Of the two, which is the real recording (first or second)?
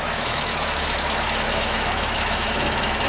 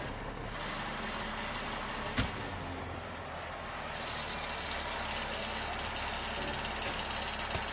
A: second